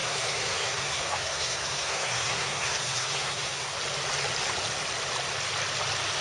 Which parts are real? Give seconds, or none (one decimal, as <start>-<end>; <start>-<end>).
3.7-6.2